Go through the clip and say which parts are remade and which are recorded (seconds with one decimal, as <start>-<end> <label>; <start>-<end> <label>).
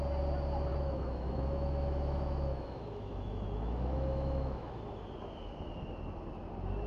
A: 0.0-0.7 recorded; 0.7-4.8 remade; 4.8-6.9 recorded